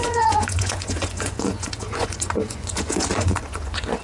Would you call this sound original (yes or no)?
no